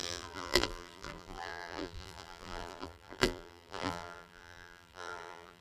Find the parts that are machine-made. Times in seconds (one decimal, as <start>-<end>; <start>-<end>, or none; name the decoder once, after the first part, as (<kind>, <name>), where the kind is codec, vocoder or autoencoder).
0.0-5.6 (vocoder, BigVGAN v2)